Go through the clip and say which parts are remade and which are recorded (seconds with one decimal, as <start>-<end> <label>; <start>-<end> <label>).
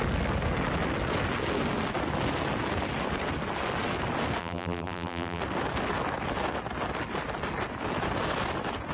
0.0-4.4 recorded; 4.4-5.4 remade; 5.4-8.9 recorded